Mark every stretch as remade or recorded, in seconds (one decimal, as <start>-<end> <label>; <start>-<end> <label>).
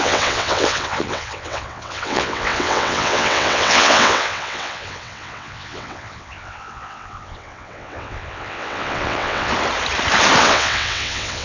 0.0-9.5 remade; 9.5-10.4 recorded; 10.4-11.4 remade